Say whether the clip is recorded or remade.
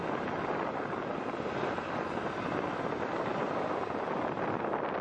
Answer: recorded